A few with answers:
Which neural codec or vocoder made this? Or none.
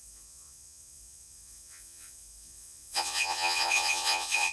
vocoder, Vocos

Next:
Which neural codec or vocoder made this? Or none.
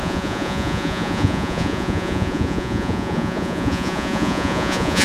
vocoder, Vocos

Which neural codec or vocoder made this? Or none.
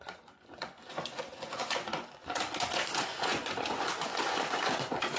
vocoder, Vocos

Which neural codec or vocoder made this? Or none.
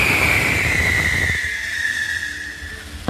none